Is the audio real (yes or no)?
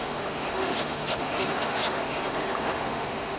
no